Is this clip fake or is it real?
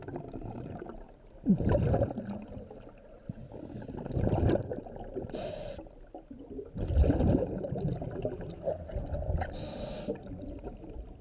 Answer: real